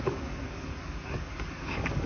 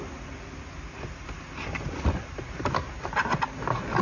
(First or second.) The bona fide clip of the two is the second